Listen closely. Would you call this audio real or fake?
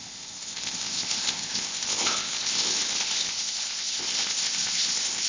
fake